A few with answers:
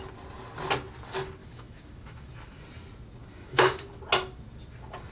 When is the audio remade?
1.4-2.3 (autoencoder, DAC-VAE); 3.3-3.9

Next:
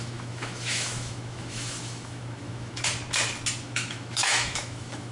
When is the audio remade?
0.0-2.9 (autoencoder, DAC-VAE); 3.6-5.1

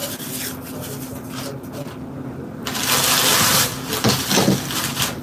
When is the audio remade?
none

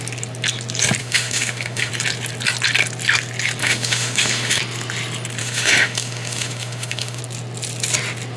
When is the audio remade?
1.0-1.9 (autoencoder, DAC-VAE); 3.6-4.6; 5.4-7.2

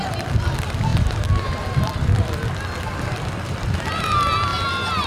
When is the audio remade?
none

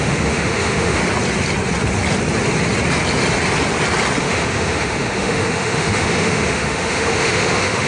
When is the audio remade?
0.0-1.0 (autoencoder, DAC-VAE); 4.2-7.9

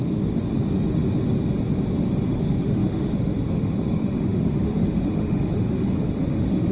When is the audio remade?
0.0-0.4 (autoencoder, DAC-VAE); 2.3-6.7